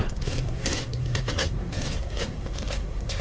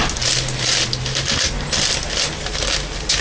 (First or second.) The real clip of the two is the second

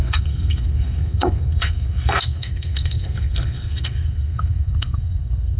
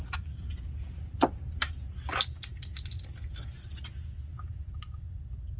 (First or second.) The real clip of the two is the second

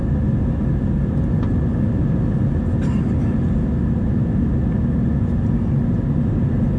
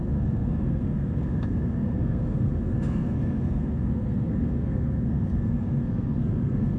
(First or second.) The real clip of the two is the first